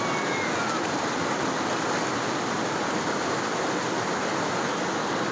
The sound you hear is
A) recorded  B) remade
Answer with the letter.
A